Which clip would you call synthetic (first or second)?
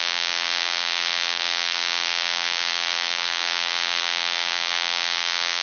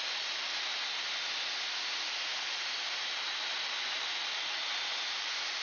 first